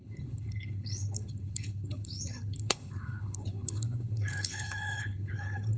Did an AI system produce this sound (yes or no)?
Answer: yes